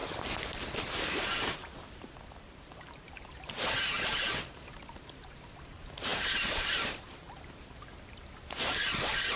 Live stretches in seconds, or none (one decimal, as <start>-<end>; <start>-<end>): 0.0-1.1